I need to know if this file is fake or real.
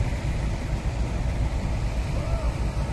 fake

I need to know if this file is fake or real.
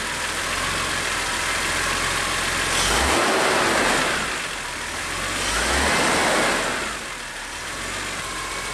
real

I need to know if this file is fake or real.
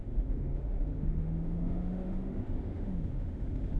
fake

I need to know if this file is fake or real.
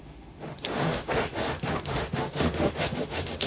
fake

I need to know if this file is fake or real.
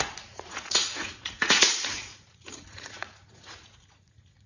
fake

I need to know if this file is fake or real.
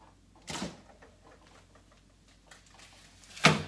real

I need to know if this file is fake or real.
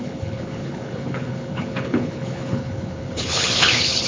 fake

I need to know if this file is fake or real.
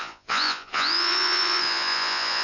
fake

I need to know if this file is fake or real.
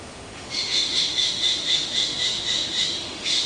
fake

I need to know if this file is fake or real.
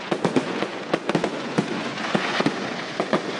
fake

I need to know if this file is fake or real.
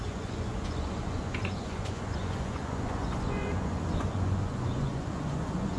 fake